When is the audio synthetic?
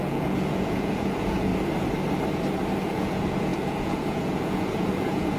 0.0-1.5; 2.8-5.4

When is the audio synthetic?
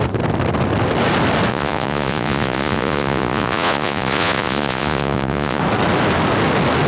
1.5-5.6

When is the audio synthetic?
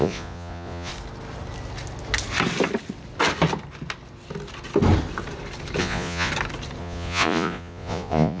0.0-0.9; 5.8-6.3; 6.8-8.4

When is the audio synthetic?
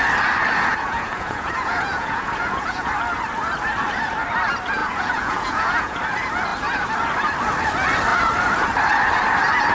0.7-2.9; 4.8-6.0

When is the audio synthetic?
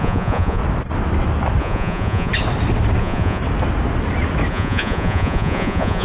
0.0-0.6; 1.6-2.3; 3.0-3.4; 4.5-6.0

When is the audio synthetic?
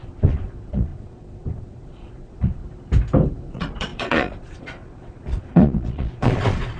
0.0-2.6; 3.5-6.8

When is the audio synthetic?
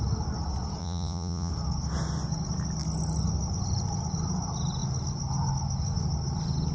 0.8-1.5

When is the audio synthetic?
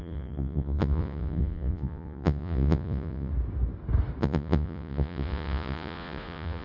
0.0-3.3; 4.2-6.6